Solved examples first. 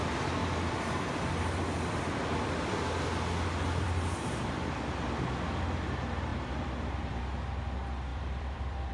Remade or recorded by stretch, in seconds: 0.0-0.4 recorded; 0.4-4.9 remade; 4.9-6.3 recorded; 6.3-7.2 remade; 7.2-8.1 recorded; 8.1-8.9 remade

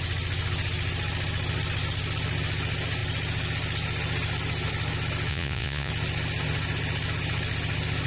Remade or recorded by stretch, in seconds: 0.0-5.3 recorded; 5.3-5.9 remade; 5.9-8.1 recorded

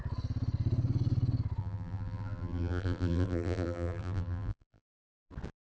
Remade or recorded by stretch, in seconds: 0.0-1.6 recorded; 1.6-5.0 remade; 5.0-5.7 recorded